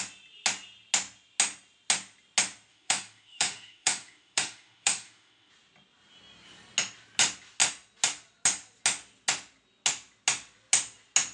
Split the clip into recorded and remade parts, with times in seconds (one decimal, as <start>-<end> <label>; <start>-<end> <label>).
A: 0.0-2.7 recorded; 2.7-5.5 remade; 5.5-11.3 recorded